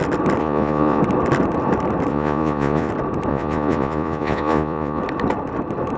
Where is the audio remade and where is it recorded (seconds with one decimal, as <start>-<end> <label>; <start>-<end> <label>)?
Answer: 0.0-0.4 recorded; 0.4-1.0 remade; 1.0-2.1 recorded; 2.1-2.9 remade; 2.9-3.3 recorded; 3.3-5.0 remade; 5.0-6.0 recorded